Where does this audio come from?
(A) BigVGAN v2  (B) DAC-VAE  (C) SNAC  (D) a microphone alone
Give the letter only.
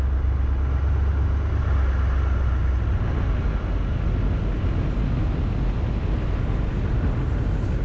D